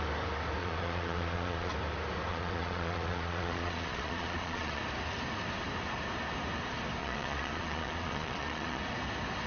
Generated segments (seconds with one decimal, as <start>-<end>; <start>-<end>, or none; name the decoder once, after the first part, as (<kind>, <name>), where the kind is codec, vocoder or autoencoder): 0.6-1.7 (vocoder, Vocos); 2.3-4.8; 7.0-8.8